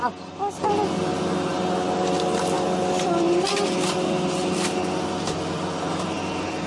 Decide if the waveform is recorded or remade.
recorded